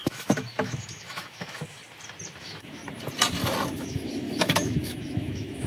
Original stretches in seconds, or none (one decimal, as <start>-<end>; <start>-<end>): 1.8-2.4; 2.8-3.8